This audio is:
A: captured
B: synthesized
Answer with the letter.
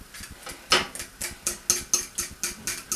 A